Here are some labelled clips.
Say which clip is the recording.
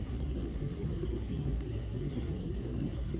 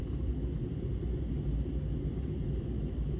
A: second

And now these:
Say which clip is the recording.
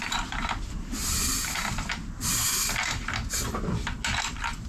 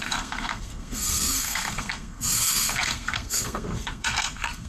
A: first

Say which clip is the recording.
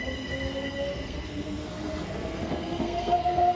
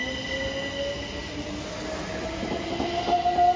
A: second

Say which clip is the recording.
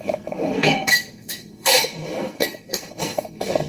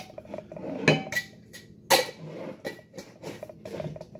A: second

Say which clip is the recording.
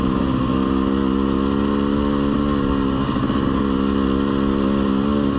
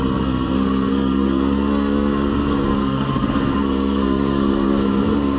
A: first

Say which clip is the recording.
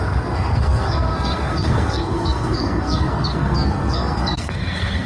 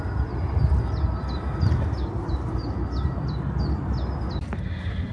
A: second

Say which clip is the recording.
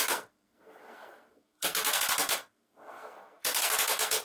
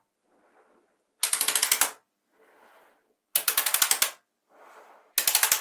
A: second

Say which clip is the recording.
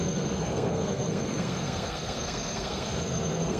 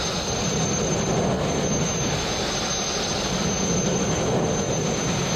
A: second